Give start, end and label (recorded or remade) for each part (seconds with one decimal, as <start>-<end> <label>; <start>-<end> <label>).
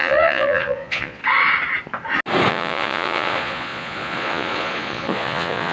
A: 0.0-1.2 remade; 1.2-2.5 recorded; 2.5-5.7 remade